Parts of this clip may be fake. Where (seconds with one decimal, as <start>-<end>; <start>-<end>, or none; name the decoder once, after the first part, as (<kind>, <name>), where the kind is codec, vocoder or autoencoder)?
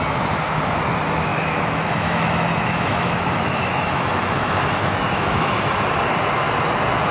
1.3-5.6 (autoencoder, DAC-VAE)